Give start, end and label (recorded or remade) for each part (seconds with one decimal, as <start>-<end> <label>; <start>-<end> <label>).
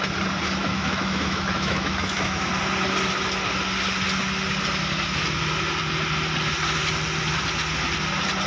0.0-0.6 recorded; 0.6-2.5 remade; 2.5-8.5 recorded